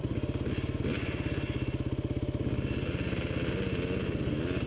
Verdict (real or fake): real